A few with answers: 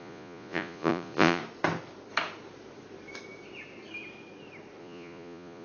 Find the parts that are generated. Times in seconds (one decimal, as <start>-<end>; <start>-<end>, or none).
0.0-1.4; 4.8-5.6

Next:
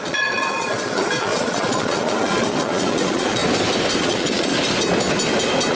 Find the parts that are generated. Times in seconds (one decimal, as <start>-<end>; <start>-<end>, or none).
0.0-3.4; 4.0-4.5

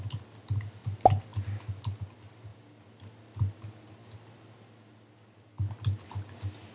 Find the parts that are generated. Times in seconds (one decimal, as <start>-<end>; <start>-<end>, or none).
none

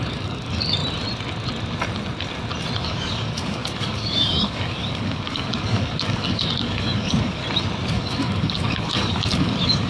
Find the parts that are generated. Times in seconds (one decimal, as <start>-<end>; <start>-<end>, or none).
0.0-0.8; 2.8-7.4; 7.9-9.9

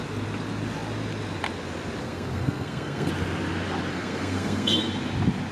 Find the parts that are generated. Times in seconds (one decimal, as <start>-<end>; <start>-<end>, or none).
2.0-3.1; 3.9-4.9

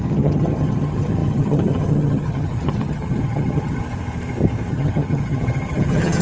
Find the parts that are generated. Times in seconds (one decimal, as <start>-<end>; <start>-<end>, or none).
0.0-3.8; 4.7-6.2